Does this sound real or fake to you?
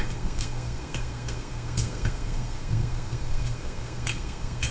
fake